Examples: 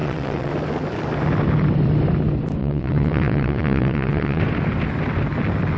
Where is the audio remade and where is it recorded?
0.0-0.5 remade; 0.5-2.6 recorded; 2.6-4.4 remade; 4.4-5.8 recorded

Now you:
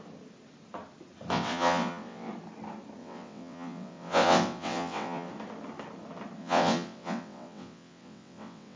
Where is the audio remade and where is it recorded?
0.0-1.3 recorded; 1.3-2.3 remade; 2.3-3.0 recorded; 3.0-5.3 remade; 5.3-6.4 recorded; 6.4-8.8 remade

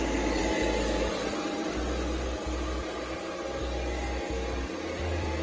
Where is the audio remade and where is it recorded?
0.0-5.4 recorded

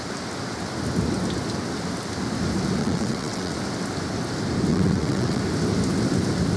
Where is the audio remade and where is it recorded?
0.0-2.8 recorded; 2.8-3.5 remade; 3.5-4.7 recorded; 4.7-5.4 remade; 5.4-6.6 recorded

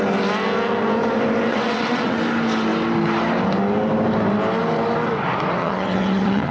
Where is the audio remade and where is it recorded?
0.0-1.5 recorded; 1.5-2.2 remade; 2.2-5.6 recorded; 5.6-6.5 remade

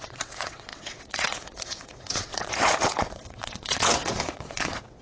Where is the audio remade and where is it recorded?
0.0-5.0 remade